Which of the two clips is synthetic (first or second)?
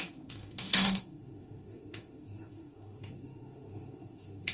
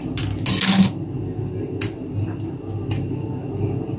first